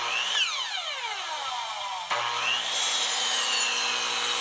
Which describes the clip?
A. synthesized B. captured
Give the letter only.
B